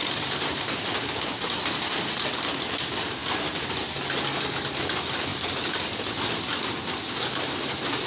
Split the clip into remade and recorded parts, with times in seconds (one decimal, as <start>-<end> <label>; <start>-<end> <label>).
0.0-0.9 remade; 0.9-5.3 recorded; 5.3-6.0 remade; 6.0-8.1 recorded